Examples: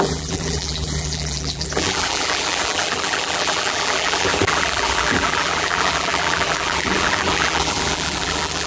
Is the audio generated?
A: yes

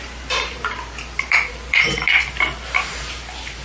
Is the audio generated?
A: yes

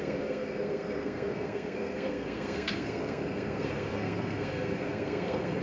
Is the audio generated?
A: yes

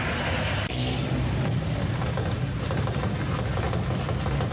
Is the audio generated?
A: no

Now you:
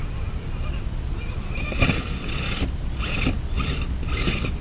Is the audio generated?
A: no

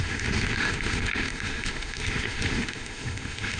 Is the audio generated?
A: yes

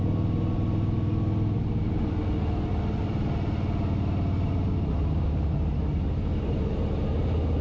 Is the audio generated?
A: no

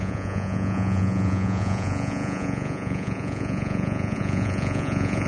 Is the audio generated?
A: yes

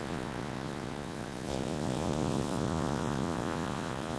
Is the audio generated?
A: yes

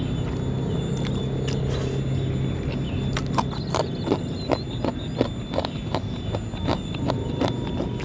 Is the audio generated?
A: no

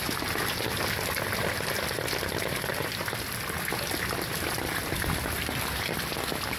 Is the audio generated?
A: no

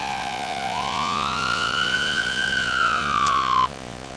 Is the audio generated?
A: yes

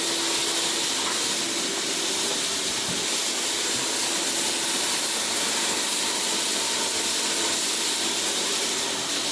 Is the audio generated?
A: no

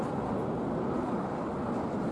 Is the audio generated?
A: no